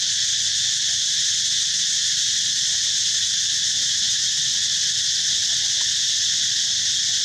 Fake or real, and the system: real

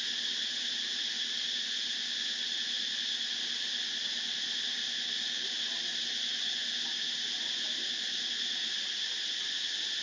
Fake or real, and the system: real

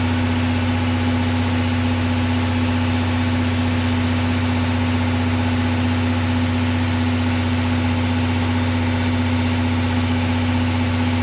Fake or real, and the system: real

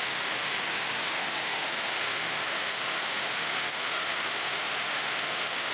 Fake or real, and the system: fake, autoencoder, DAC-VAE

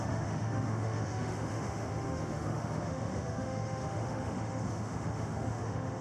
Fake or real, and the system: fake, autoencoder, DAC-VAE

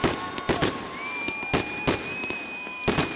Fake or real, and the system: real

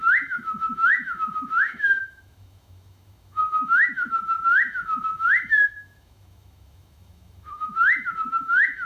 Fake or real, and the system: fake, autoencoder, DAC-VAE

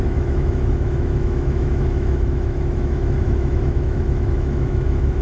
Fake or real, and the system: fake, autoencoder, DAC-VAE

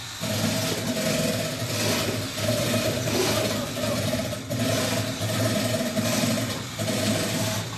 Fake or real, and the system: real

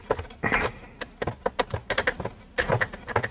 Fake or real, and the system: real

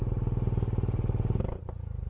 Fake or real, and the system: real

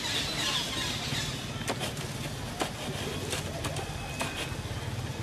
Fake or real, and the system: real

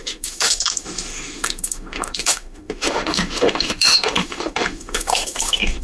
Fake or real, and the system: fake, autoencoder, DAC-VAE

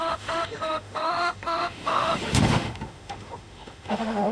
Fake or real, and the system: fake, autoencoder, DAC-VAE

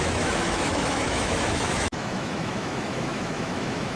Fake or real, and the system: fake, autoencoder, DAC-VAE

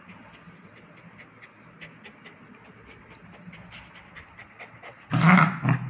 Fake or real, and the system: real